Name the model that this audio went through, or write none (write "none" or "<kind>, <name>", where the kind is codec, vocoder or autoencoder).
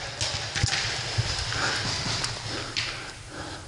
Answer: none